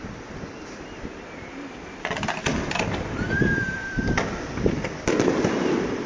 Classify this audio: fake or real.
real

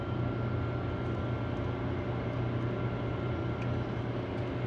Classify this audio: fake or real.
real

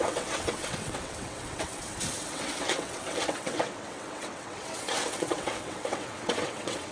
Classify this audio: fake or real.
fake